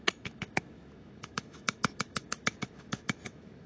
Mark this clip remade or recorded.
remade